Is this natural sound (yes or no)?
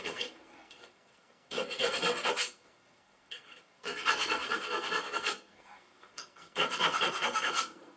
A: no